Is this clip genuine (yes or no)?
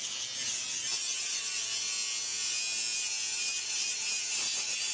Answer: yes